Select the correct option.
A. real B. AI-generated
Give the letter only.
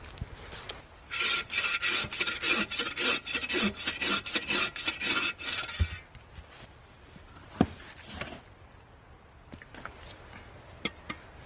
A